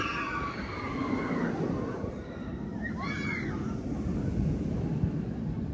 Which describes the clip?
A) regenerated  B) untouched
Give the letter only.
B